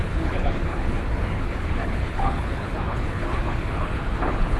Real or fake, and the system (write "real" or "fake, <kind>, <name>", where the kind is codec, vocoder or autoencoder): fake, codec, HILCodec